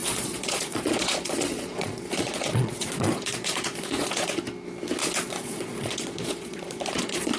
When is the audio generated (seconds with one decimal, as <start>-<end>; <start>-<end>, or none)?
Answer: 0.0-4.4; 5.0-7.4